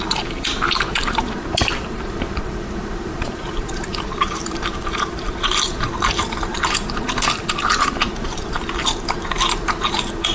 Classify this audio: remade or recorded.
remade